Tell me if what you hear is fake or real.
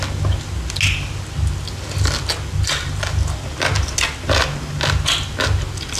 real